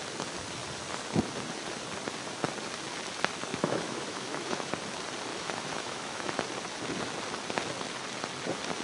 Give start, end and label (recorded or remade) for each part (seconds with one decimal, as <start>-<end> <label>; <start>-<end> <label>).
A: 0.0-3.5 recorded; 3.5-4.7 remade; 4.7-5.3 recorded; 5.3-6.4 remade; 6.4-8.8 recorded